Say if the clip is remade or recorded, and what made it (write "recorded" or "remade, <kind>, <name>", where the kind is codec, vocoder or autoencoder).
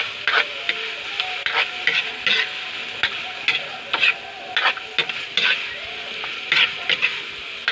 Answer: recorded